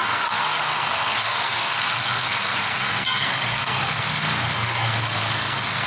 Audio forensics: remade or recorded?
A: remade